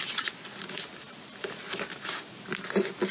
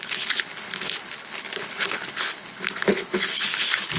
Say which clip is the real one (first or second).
first